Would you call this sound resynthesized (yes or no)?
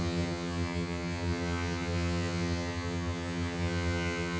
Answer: yes